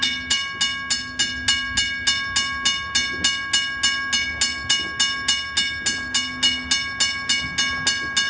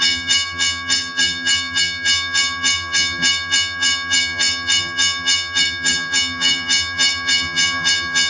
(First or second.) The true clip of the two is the first